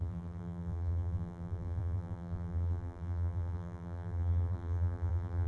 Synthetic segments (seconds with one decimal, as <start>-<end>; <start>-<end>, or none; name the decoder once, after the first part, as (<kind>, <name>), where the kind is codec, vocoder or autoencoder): 0.0-5.5 (vocoder, BigVGAN v2)